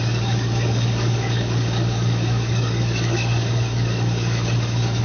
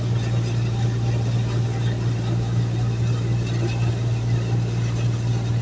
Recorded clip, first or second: second